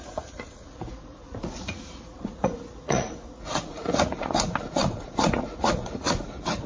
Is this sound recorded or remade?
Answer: remade